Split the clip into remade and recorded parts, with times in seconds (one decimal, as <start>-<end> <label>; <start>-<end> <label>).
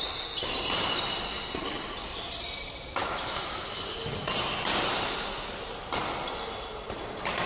0.0-3.0 recorded; 3.0-3.8 remade; 3.8-7.5 recorded